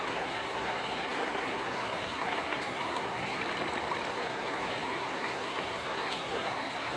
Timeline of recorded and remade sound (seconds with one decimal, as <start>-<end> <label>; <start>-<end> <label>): 0.0-3.4 remade; 3.4-4.1 recorded; 4.1-7.0 remade

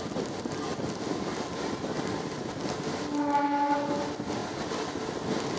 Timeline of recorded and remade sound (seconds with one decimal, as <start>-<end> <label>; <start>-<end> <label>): 0.0-5.6 recorded

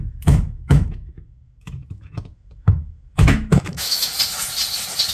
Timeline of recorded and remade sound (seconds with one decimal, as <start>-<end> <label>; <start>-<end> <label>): 0.0-4.1 remade; 4.1-5.1 recorded